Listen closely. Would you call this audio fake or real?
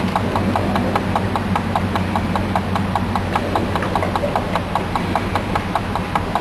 real